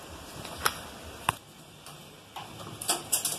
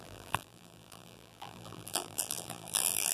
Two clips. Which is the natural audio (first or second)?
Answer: first